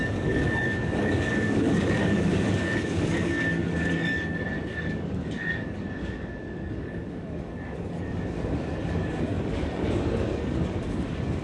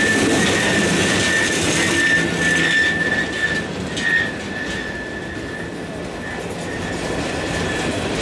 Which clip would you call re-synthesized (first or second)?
first